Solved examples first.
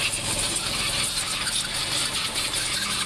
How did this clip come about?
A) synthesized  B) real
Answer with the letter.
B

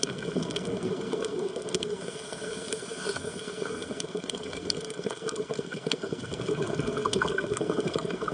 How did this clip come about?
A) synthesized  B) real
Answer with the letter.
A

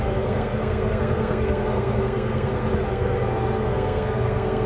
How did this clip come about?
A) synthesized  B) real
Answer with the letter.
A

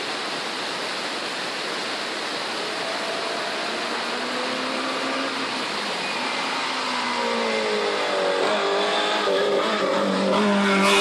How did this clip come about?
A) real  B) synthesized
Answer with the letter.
A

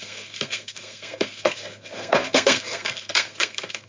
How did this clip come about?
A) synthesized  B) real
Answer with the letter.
A